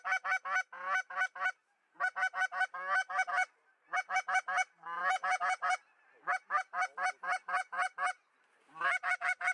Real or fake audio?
real